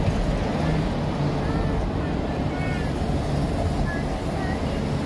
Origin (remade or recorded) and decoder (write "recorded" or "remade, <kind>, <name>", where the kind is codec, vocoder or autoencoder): recorded